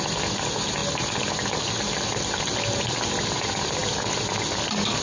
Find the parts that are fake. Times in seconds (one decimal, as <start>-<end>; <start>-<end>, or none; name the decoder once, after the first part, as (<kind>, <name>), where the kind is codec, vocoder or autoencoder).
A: none

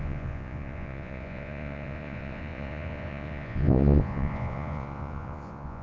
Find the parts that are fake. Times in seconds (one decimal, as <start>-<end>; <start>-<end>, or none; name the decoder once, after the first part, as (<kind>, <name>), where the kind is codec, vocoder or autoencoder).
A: 0.0-5.8 (vocoder, Vocos)

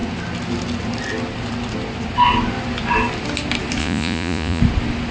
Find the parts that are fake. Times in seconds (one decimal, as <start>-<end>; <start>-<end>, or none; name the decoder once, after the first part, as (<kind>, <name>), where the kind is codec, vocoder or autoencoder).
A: 3.8-4.6 (vocoder, Vocos)

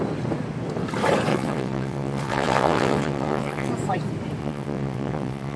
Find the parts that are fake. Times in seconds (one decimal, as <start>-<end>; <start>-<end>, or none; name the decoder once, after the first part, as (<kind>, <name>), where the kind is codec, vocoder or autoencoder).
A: 1.3-3.7 (vocoder, WaveNeXt); 4.4-5.6

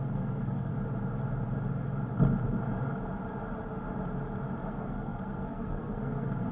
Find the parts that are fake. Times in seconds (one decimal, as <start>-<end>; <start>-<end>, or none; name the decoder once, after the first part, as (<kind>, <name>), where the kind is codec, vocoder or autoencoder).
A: 0.0-0.7 (codec, SNAC); 4.6-6.5

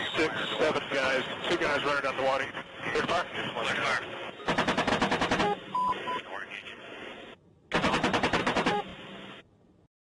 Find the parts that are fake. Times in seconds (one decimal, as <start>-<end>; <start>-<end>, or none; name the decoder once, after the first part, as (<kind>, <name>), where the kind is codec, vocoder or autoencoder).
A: 2.6-4.1 (vocoder, BigVGAN v2)